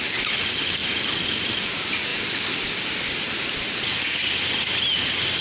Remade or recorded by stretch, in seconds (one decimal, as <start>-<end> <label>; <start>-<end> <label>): 0.0-5.4 recorded

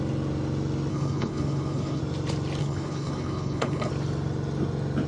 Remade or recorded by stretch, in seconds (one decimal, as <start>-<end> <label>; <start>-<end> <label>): 0.0-0.9 recorded; 0.9-2.0 remade; 2.0-2.6 recorded; 2.6-3.9 remade; 3.9-5.1 recorded

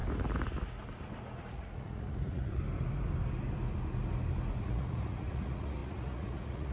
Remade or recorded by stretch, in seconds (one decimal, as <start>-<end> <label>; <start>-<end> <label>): 0.0-1.4 recorded; 1.4-2.6 remade; 2.6-4.6 recorded; 4.6-6.7 remade

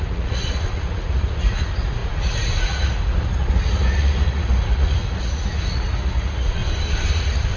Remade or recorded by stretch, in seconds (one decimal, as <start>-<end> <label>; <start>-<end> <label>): 0.0-6.6 remade; 6.6-7.1 recorded; 7.1-7.6 remade